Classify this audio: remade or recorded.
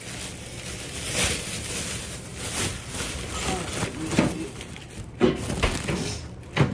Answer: recorded